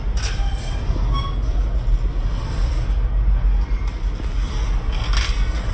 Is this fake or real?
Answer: real